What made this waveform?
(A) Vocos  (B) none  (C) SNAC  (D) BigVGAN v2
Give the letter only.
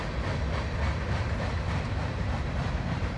D